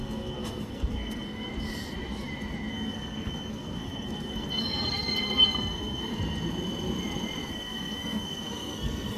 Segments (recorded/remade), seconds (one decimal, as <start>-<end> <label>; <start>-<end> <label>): 0.0-1.5 remade; 1.5-2.7 recorded; 2.7-6.1 remade; 6.1-7.5 recorded; 7.5-9.2 remade